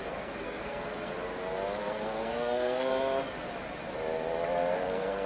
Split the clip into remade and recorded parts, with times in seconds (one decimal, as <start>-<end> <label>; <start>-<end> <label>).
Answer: 0.0-1.1 remade; 1.1-1.8 recorded; 1.8-2.9 remade; 2.9-4.7 recorded; 4.7-5.3 remade